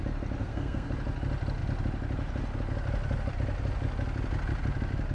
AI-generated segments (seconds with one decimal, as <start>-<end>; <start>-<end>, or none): 0.4-0.9